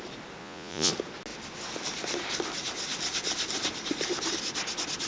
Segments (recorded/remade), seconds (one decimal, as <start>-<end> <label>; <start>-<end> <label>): 0.0-0.4 recorded; 0.4-0.9 remade; 0.9-5.1 recorded